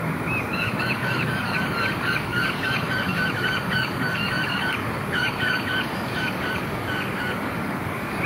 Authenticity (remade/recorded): remade